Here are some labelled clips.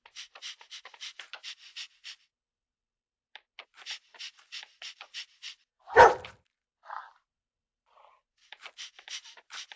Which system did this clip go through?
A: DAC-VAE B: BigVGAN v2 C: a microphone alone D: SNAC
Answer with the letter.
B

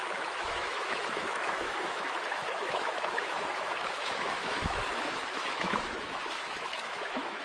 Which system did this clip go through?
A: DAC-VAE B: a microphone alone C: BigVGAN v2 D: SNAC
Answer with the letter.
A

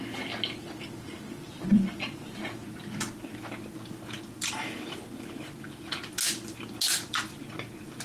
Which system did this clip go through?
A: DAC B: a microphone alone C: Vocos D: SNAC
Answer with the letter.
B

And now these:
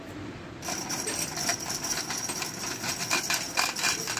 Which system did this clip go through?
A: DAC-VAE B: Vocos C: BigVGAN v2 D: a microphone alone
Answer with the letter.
C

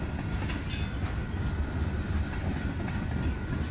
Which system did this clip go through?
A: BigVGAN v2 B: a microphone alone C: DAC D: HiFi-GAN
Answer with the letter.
B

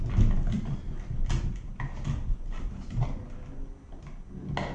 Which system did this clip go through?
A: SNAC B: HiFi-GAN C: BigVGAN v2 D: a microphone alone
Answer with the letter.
D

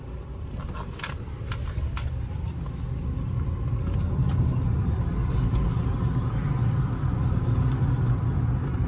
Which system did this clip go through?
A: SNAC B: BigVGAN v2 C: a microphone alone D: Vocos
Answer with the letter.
C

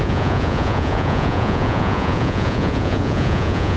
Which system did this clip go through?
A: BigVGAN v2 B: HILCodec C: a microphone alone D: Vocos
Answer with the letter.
D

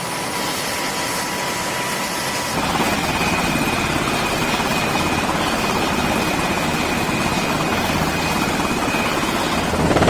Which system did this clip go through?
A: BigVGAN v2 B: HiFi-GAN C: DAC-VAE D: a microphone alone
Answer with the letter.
D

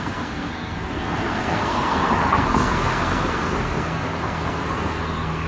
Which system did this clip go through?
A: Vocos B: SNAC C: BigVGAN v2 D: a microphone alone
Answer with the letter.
B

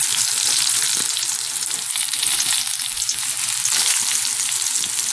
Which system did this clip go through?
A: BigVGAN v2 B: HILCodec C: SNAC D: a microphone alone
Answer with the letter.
A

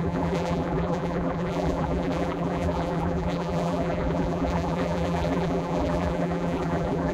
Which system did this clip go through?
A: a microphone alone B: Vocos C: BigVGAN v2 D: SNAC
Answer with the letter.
C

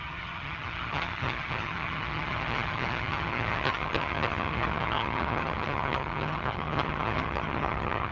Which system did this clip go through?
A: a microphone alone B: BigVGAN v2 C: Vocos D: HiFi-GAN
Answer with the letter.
D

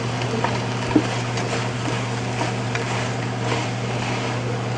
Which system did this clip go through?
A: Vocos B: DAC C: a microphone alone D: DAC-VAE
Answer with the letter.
C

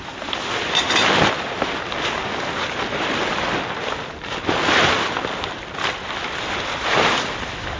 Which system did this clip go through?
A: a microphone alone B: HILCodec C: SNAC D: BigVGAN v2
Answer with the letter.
A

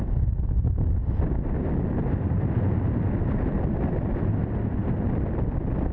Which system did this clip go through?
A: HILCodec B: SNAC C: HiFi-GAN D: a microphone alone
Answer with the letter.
D